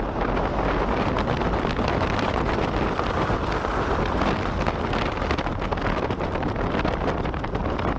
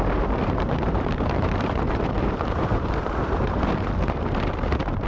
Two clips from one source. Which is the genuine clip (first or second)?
first